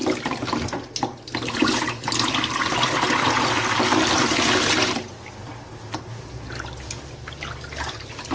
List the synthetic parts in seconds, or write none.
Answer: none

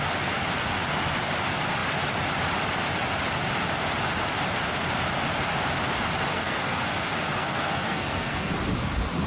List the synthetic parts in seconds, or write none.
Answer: 6.3-8.5 (codec, SNAC)

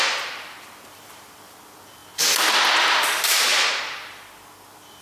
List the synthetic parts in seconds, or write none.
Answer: none

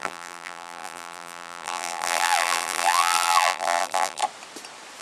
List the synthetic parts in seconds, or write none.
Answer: 0.0-4.2 (vocoder, BigVGAN v2)

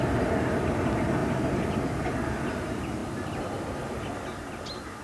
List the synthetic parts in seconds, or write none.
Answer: none

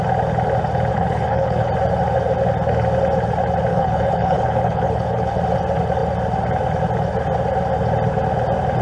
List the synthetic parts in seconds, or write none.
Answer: 0.9-1.7 (codec, HILCodec); 3.7-5.4

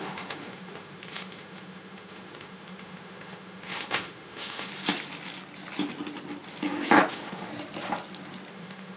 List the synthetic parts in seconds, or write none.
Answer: 0.0-4.7 (autoencoder, DAC-VAE); 7.1-7.5; 8.5-9.0